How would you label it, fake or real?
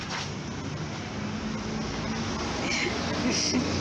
real